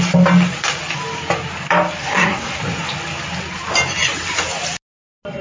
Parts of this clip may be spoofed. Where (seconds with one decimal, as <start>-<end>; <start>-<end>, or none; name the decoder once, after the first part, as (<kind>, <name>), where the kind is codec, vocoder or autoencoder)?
2.0-2.6 (codec, SNAC)